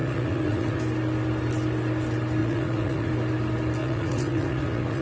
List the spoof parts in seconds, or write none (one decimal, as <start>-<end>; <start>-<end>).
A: 0.0-0.8; 2.4-3.1; 3.8-5.0